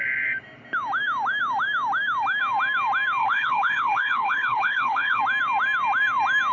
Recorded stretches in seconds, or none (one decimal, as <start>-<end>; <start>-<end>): 0.0-3.2; 5.2-6.5